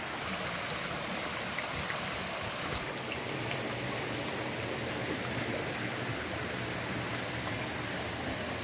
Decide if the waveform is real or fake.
real